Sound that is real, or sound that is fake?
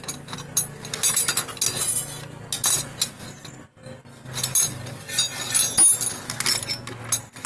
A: real